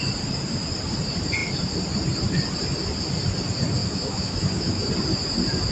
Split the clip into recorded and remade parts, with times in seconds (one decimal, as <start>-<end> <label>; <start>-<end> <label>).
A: 0.0-3.8 recorded; 3.8-4.9 remade; 4.9-5.7 recorded